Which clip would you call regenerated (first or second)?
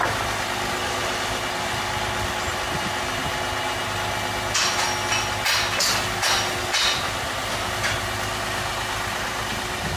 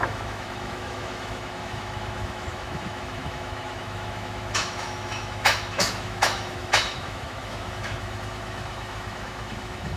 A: second